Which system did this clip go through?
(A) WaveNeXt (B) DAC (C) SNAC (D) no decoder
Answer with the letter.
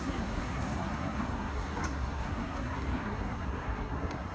C